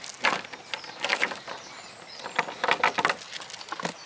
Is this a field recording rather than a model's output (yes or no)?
yes